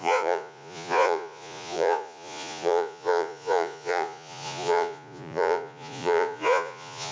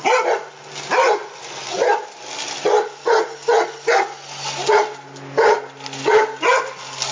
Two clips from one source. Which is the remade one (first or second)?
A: first